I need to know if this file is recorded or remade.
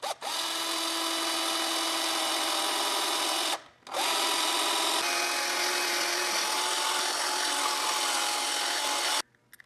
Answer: recorded